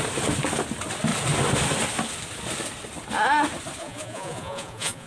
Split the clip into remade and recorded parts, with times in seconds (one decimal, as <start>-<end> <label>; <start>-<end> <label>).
0.0-3.8 recorded; 3.8-5.1 remade